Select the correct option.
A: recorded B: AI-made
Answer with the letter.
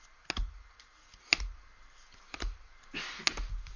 A